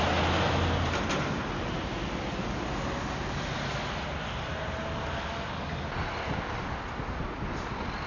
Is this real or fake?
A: real